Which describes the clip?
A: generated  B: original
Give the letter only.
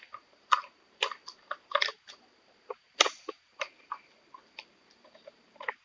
A